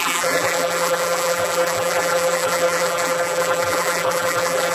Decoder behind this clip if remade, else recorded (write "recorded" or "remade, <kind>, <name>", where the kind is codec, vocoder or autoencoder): remade, vocoder, BigVGAN v2